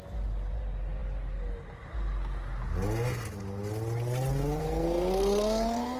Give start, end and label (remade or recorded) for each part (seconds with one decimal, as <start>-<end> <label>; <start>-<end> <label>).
0.0-4.6 recorded; 4.6-6.0 remade